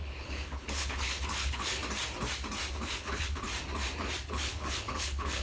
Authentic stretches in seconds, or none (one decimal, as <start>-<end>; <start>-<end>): 1.8-2.7; 3.5-4.3